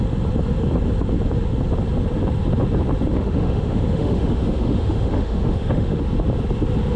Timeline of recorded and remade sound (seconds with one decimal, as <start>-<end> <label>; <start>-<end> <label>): 0.0-3.1 recorded; 3.1-6.0 remade; 6.0-7.0 recorded